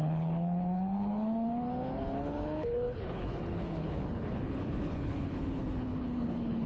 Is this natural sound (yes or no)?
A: no